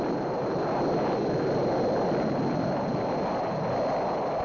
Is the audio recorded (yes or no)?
yes